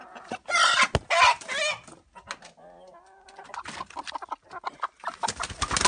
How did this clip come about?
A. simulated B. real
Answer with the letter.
B